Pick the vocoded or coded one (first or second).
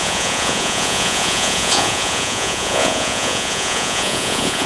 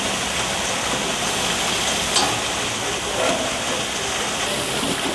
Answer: first